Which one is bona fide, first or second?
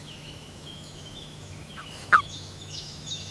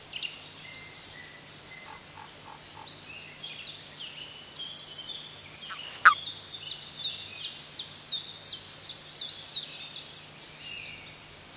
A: second